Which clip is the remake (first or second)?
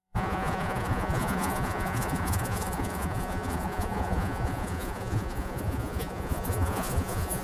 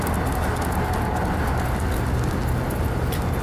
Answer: first